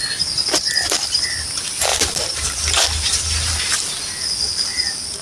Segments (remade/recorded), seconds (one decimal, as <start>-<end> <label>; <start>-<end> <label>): 0.0-1.9 recorded; 1.9-5.2 remade